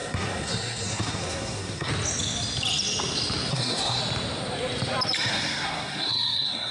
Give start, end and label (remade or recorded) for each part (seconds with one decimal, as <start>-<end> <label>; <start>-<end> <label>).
0.0-1.9 remade; 1.9-3.5 recorded; 3.5-4.0 remade; 4.0-5.3 recorded; 5.3-6.7 remade